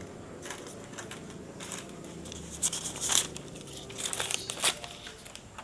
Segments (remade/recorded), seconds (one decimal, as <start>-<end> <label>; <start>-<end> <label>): 0.0-1.0 recorded; 1.0-4.4 remade; 4.4-5.6 recorded